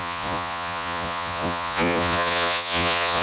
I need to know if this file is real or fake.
fake